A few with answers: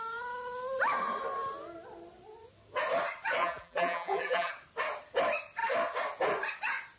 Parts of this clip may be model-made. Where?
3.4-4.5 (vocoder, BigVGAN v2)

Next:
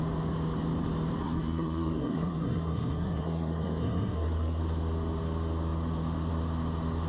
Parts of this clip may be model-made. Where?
1.2-4.6 (codec, SNAC)

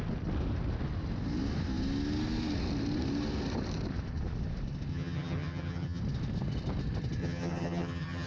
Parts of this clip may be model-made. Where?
4.9-6.0 (vocoder, HiFi-GAN); 7.2-8.3

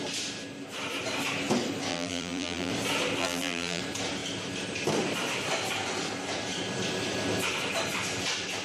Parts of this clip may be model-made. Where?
1.9-2.7 (vocoder, BigVGAN v2); 3.2-3.8

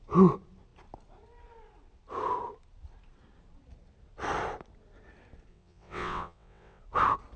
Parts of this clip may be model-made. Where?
5.5-6.8 (vocoder, WaveNeXt)

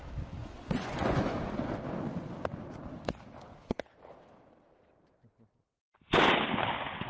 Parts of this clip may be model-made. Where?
0.4-1.4 (vocoder, Vocos)

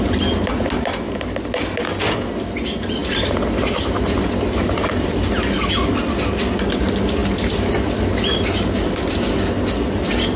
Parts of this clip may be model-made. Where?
3.0-5.1 (vocoder, BigVGAN v2)

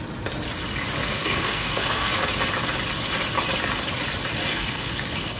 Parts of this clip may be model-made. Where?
1.0-2.1 (codec, SNAC); 4.5-5.4